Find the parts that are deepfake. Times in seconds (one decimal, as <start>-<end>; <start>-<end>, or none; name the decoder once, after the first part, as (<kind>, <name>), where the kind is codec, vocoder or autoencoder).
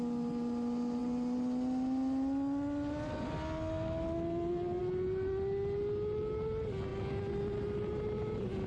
none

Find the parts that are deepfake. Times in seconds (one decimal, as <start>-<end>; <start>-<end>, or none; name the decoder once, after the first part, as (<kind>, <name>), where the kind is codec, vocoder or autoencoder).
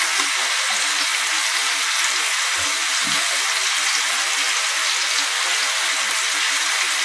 none